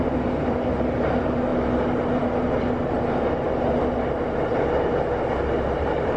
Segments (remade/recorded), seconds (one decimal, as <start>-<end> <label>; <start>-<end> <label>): 0.0-6.2 recorded